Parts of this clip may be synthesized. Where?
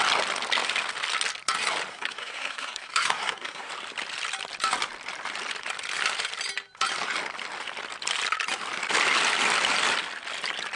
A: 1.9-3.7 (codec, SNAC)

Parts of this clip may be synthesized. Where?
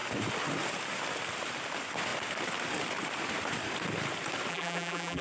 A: 4.5-5.2 (vocoder, BigVGAN v2)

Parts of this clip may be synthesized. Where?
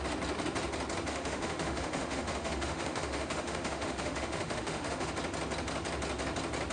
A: 1.1-5.1 (autoencoder, DAC-VAE)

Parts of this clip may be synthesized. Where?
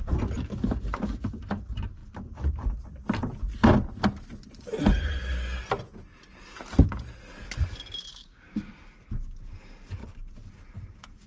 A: 8.2-8.7 (codec, DAC)